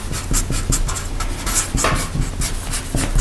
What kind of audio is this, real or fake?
real